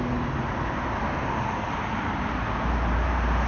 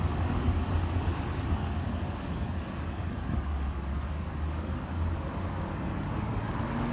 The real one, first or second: first